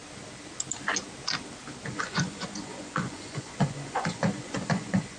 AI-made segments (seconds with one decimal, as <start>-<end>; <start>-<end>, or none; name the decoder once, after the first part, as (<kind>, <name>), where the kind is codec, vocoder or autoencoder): 1.9-5.2 (vocoder, Vocos)